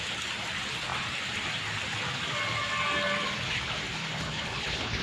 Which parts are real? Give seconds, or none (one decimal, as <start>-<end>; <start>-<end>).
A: 0.0-4.0